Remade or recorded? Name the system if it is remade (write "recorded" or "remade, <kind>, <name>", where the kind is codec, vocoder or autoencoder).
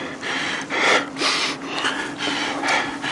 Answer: recorded